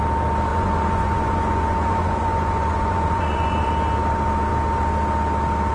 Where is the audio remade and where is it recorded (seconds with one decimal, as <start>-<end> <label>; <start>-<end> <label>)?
0.0-0.5 recorded; 0.5-3.7 remade; 3.7-5.7 recorded